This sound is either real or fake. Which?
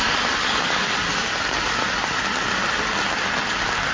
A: real